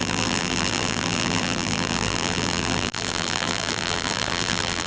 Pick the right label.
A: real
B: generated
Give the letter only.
B